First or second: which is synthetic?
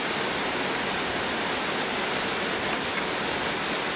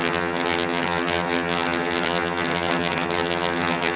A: second